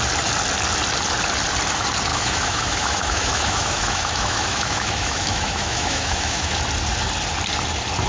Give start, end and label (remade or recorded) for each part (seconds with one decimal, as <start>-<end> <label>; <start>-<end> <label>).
0.0-2.1 recorded; 2.1-6.6 remade; 6.6-8.1 recorded